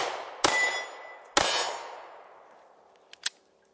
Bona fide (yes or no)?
yes